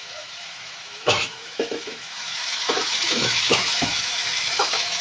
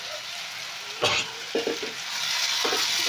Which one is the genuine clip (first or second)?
second